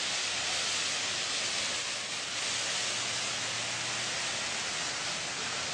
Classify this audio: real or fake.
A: real